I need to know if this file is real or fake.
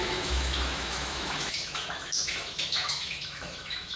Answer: fake